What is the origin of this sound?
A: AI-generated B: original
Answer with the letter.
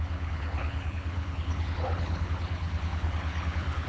A